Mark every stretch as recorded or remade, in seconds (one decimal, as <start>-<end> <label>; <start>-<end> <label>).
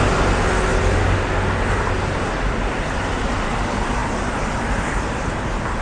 0.0-5.8 recorded